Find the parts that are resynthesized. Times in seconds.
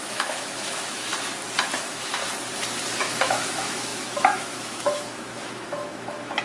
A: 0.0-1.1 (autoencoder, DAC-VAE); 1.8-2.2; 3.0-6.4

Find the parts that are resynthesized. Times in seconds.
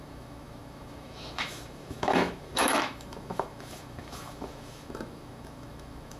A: 0.0-6.2 (autoencoder, DAC-VAE)